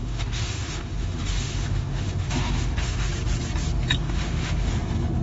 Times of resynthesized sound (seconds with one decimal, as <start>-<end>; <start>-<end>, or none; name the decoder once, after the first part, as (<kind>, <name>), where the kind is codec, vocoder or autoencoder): 0.0-3.1 (autoencoder, DAC-VAE); 4.0-4.7